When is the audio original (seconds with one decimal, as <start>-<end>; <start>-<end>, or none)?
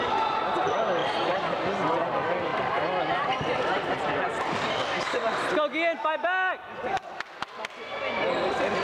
0.0-1.0; 2.1-2.5; 4.7-8.8